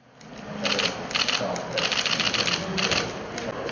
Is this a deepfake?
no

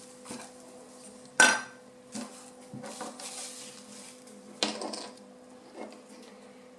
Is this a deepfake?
no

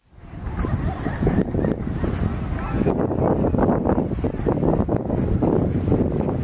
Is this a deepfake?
no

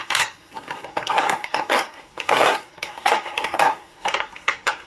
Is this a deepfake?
yes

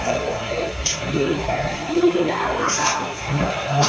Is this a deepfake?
yes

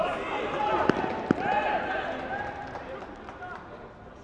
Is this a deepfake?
no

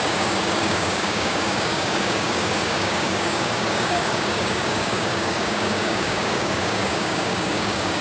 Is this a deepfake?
yes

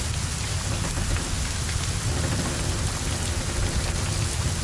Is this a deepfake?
no